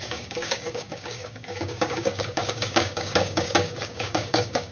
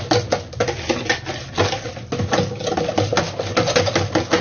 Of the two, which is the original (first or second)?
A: second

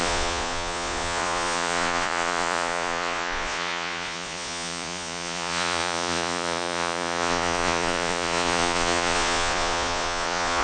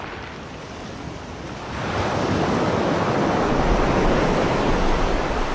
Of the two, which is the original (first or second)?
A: second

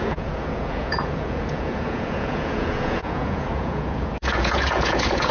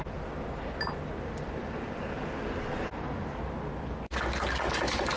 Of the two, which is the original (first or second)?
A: second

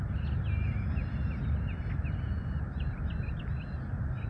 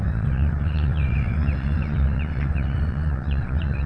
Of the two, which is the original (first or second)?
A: first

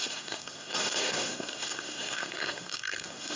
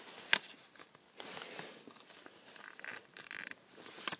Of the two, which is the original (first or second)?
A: second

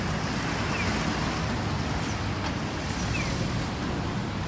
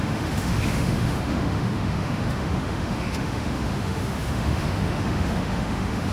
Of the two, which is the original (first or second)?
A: first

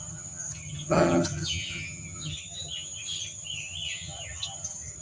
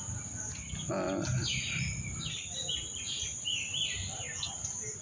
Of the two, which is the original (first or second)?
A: second